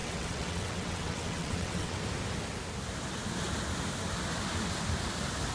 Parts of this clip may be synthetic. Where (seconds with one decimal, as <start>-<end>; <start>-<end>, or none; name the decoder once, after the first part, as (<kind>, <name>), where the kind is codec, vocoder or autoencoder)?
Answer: 0.0-2.0 (vocoder, WaveNeXt)